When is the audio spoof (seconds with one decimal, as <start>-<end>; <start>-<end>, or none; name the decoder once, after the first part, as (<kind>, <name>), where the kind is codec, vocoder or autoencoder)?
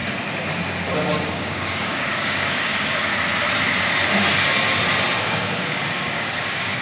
1.3-3.1 (codec, DAC); 5.2-6.8